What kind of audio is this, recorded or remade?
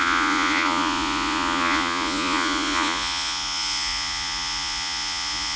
remade